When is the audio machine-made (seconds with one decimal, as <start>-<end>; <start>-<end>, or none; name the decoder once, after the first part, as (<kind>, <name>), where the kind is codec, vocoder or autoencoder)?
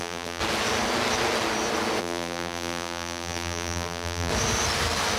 0.0-0.4 (vocoder, BigVGAN v2); 2.0-4.3